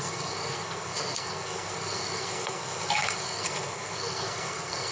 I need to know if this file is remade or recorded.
remade